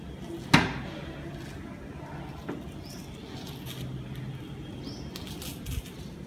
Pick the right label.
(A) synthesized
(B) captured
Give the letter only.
B